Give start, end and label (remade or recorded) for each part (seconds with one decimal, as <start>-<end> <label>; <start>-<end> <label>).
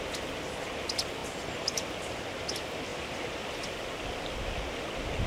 0.0-5.3 recorded